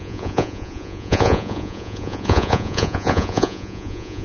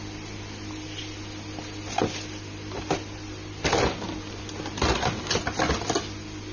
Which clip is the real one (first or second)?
second